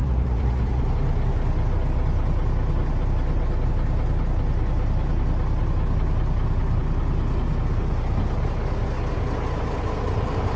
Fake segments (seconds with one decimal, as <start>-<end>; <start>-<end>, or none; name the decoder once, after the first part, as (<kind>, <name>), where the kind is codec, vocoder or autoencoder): 0.0-0.8 (vocoder, Vocos)